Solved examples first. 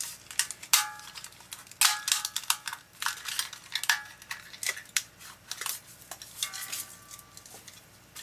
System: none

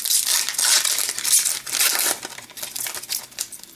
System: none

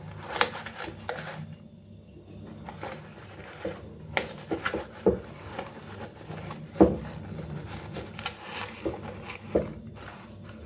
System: none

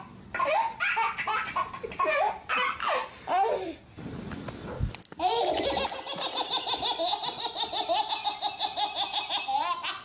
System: none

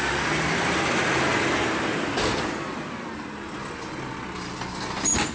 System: none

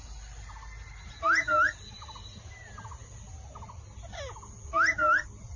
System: none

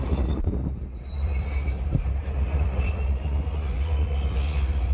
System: vocoder, Vocos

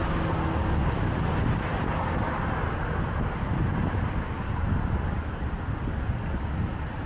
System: none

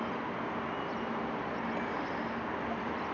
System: none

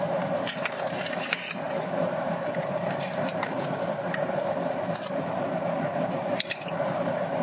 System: vocoder, BigVGAN v2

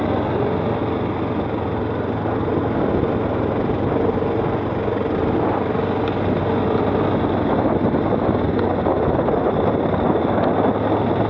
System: none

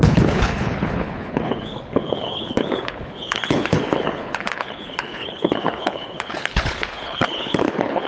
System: codec, HILCodec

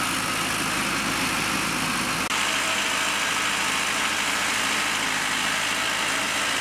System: none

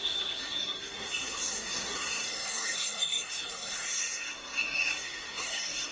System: codec, SNAC